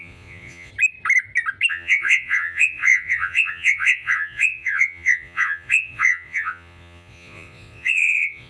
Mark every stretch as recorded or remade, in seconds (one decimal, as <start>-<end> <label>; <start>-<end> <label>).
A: 0.0-0.7 remade; 0.7-1.7 recorded; 1.7-8.5 remade